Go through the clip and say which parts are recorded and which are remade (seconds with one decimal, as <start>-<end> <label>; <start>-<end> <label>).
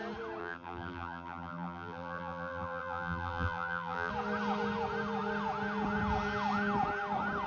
0.0-0.4 recorded; 0.4-4.1 remade; 4.1-7.5 recorded